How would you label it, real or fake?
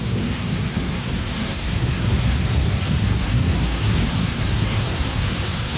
fake